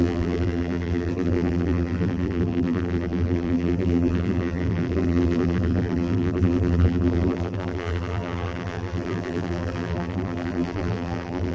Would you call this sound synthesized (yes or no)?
yes